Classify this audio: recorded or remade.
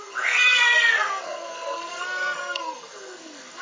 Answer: remade